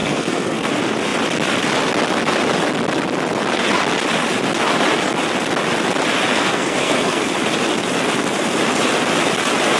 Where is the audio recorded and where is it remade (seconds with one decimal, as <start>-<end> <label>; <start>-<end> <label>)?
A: 0.0-0.7 remade; 0.7-6.3 recorded; 6.3-7.2 remade; 7.2-9.8 recorded